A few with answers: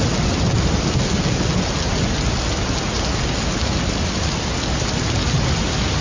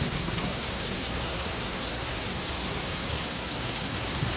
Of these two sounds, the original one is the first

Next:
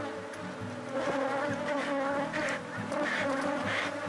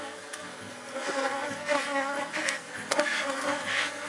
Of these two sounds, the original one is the first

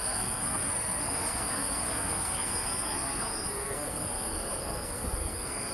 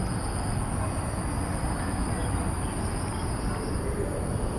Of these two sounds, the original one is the second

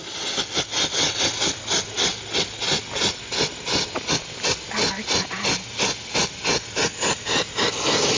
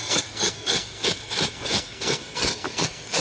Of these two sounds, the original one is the first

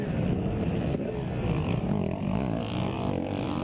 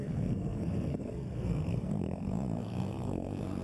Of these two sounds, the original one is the first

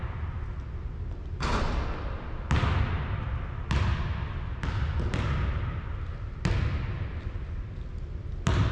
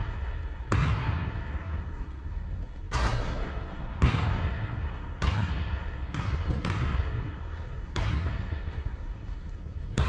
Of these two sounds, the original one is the first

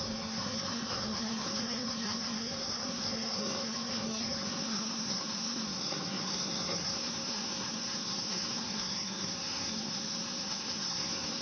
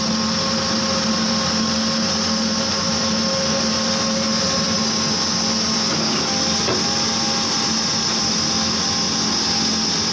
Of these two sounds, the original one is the second